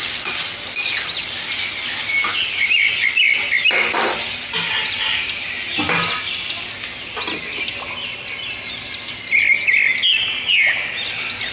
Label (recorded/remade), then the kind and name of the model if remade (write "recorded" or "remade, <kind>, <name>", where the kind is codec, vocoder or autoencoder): recorded